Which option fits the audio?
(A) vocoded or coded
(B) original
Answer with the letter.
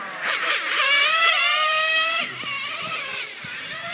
A